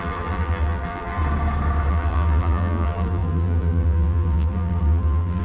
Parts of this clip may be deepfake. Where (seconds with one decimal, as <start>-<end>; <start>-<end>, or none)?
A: 0.0-1.2; 1.9-5.4